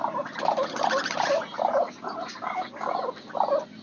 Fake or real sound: real